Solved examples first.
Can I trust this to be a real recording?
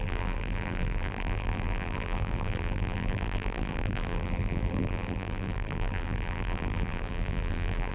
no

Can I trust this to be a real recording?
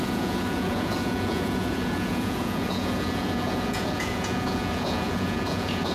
no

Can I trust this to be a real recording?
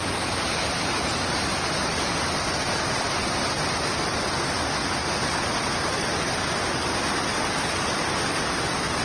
yes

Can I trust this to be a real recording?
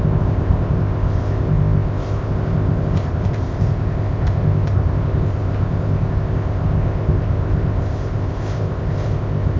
no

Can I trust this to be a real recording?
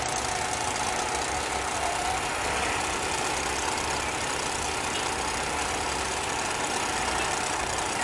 yes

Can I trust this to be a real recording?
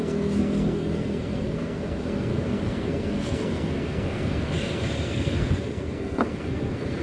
no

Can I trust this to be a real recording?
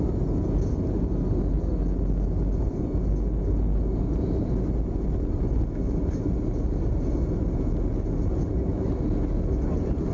yes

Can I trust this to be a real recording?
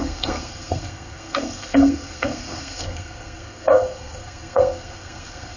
no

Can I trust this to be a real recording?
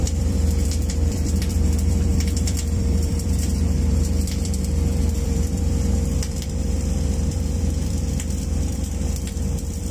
no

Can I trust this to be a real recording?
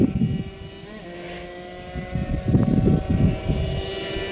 yes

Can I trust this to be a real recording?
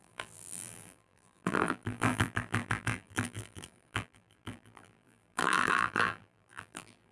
no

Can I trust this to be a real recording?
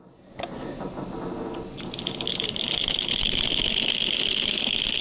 yes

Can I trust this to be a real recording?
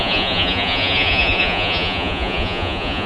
no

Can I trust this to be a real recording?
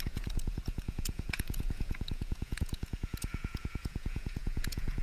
no